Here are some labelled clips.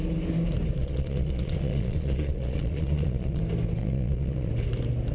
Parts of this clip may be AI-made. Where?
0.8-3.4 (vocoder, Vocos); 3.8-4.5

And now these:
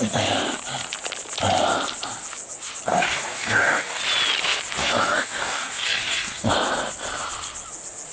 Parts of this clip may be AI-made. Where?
2.9-4.0 (codec, DAC); 4.8-6.5

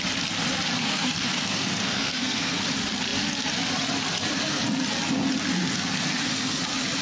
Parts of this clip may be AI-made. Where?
0.8-2.6 (codec, SNAC)

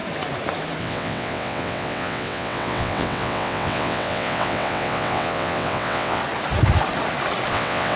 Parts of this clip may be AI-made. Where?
0.8-6.2 (vocoder, WaveNeXt); 7.5-8.0